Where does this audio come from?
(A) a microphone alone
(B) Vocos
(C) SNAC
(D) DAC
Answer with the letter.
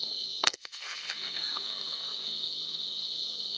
C